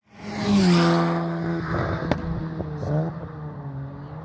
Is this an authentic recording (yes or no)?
yes